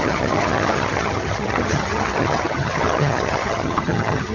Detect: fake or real fake